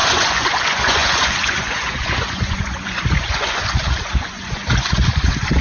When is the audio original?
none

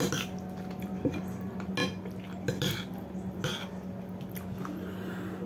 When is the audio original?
0.0-5.5

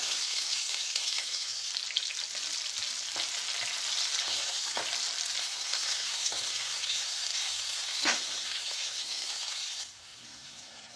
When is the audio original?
1.7-4.2; 4.8-5.4

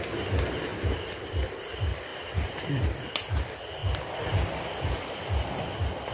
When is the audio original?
0.0-0.7; 1.5-2.1; 2.8-3.8; 5.1-6.1

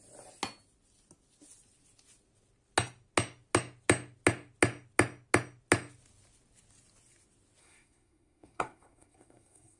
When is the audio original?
0.0-7.6

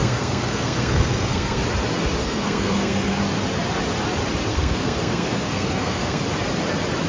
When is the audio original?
1.6-2.2; 3.2-4.5; 6.2-7.1

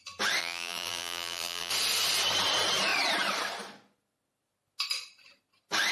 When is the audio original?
0.0-0.4; 1.7-5.9